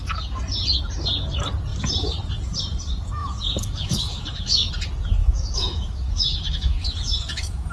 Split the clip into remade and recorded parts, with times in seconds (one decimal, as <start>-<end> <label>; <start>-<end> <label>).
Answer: 0.0-3.2 recorded; 3.2-4.7 remade; 4.7-5.2 recorded; 5.2-7.7 remade